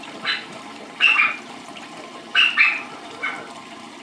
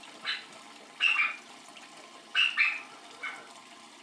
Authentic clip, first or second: second